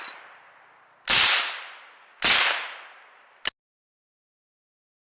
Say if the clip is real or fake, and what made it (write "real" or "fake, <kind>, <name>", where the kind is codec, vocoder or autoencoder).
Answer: real